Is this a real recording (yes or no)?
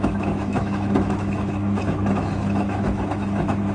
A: no